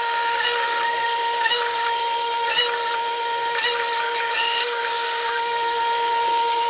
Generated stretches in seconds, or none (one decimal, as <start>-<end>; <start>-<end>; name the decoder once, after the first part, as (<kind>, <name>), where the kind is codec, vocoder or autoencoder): 0.0-2.6 (codec, DAC); 4.3-6.7